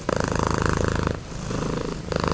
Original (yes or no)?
no